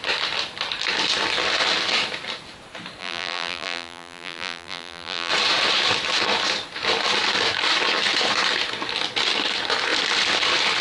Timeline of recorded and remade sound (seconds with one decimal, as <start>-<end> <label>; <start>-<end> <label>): 0.0-3.0 recorded; 3.0-5.3 remade; 5.3-10.8 recorded